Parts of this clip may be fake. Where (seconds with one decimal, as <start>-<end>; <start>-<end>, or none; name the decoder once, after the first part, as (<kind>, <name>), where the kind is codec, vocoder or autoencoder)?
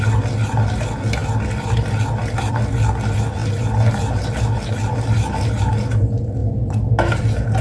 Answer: none